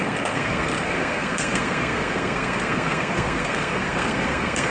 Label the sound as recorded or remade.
remade